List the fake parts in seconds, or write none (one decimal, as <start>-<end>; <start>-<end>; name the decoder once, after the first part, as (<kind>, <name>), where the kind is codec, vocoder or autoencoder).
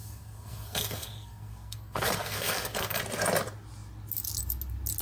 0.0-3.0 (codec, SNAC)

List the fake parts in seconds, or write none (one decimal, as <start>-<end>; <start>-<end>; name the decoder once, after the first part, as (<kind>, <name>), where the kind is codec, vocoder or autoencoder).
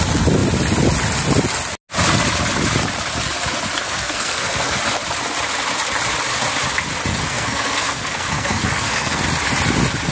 3.8-4.8 (codec, SNAC); 7.1-9.2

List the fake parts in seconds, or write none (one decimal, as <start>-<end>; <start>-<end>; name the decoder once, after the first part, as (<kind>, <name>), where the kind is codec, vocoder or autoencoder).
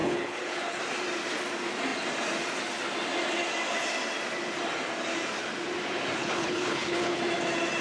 0.0-0.8 (codec, HILCodec); 6.2-7.2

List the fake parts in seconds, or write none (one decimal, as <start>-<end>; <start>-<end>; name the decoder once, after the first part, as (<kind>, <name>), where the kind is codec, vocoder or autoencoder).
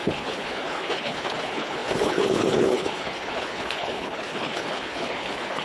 0.0-5.6 (codec, HILCodec)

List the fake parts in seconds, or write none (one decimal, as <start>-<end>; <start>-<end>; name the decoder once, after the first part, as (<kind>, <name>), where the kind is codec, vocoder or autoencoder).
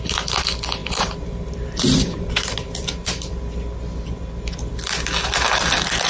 0.8-3.4 (vocoder, BigVGAN v2)